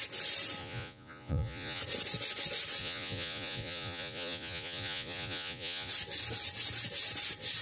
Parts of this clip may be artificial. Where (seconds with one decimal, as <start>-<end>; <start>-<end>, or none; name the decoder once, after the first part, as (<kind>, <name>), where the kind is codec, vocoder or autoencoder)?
0.6-1.8 (vocoder, Vocos); 2.8-5.9